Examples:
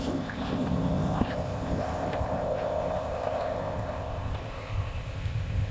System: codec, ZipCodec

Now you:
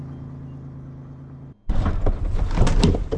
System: none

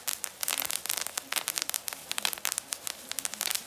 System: none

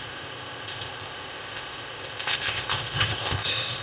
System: codec, ZipCodec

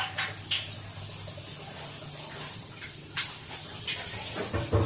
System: none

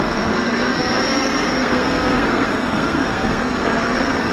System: codec, SNAC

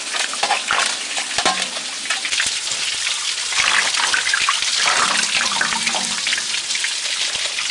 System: none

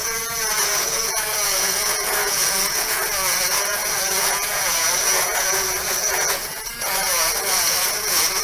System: vocoder, Vocos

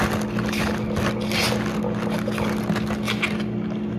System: none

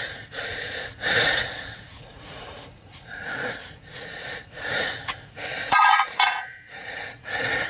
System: vocoder, Vocos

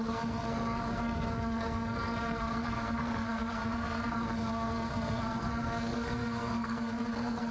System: codec, SNAC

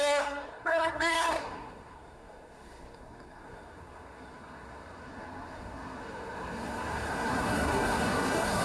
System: codec, SNAC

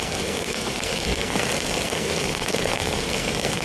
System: codec, SNAC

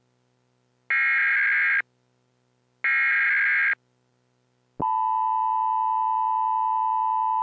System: none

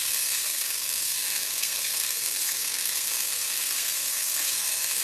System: codec, SNAC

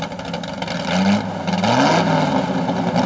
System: none